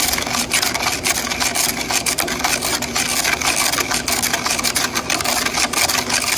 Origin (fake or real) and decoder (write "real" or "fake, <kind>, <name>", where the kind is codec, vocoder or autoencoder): real